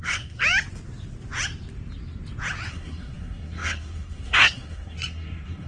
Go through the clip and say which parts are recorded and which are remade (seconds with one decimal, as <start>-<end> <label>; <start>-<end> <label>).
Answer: 0.0-0.4 remade; 0.4-2.7 recorded; 2.7-5.7 remade